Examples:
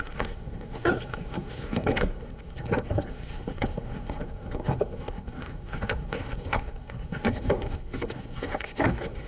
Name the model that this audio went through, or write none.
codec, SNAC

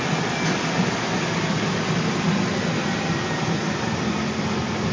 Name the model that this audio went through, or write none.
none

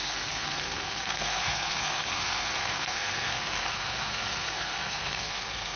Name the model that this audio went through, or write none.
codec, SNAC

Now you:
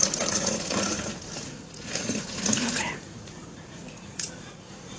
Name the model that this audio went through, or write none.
vocoder, Vocos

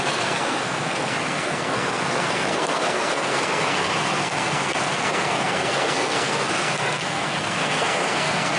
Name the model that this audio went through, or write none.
codec, SNAC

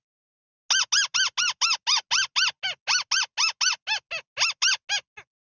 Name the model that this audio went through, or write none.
none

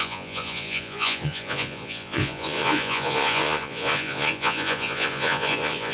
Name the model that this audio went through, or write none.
vocoder, Vocos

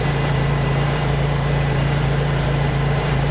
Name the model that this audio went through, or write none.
vocoder, BigVGAN v2